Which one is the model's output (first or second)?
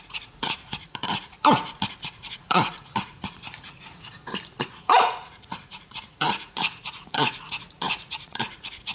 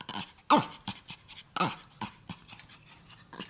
first